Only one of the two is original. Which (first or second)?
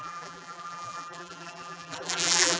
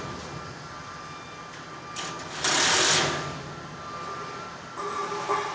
second